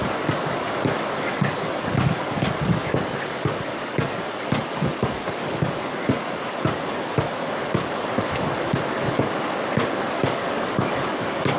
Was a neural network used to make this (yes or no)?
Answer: yes